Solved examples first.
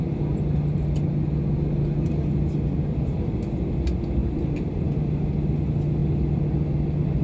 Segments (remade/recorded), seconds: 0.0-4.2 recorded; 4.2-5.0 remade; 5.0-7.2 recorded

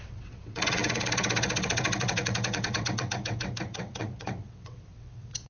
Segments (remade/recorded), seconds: 0.0-5.5 remade